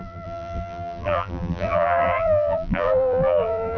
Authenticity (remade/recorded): remade